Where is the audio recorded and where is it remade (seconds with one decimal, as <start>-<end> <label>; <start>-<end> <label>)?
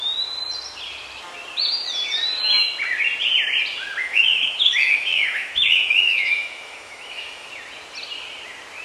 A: 0.0-4.0 recorded; 4.0-7.5 remade; 7.5-8.8 recorded